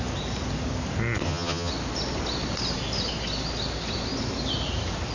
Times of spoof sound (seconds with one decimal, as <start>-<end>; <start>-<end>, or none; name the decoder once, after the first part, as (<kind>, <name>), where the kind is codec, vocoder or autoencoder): 1.2-1.7 (vocoder, HiFi-GAN)